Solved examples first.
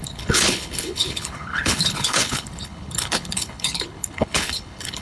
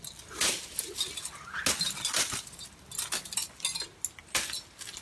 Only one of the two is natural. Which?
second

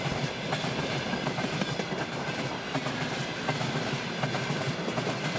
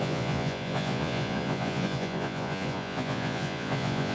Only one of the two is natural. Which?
first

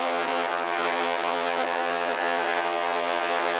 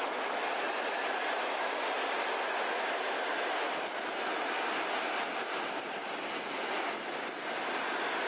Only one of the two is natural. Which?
second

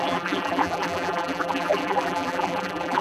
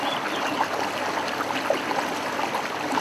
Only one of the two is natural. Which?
second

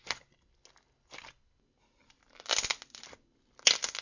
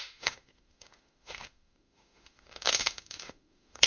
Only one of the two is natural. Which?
first